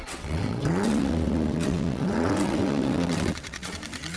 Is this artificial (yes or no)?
yes